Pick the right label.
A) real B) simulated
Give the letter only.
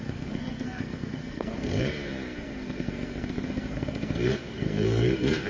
B